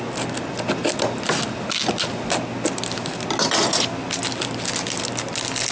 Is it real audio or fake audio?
real